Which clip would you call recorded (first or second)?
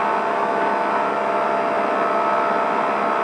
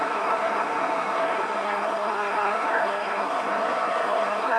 first